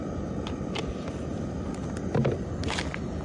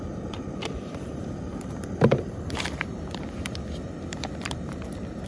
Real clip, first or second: first